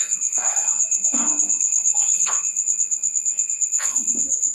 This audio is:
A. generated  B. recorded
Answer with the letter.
A